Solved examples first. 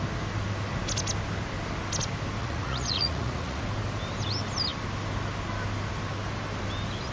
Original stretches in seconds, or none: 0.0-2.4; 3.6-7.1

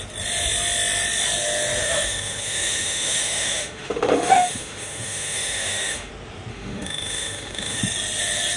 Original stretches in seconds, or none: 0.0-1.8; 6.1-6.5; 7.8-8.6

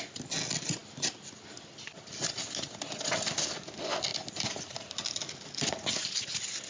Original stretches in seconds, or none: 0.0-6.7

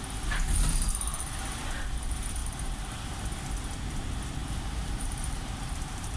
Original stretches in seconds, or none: 0.0-2.4; 3.0-4.4